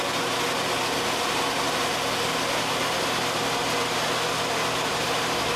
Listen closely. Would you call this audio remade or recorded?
recorded